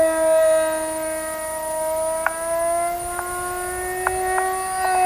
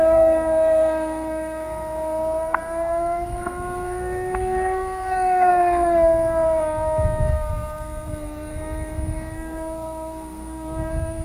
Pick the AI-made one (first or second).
second